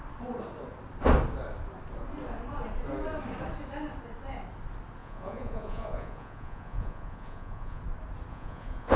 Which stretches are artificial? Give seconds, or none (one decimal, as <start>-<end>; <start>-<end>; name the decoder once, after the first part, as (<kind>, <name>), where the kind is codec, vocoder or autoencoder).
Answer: 5.0-7.8 (vocoder, Vocos); 8.3-9.0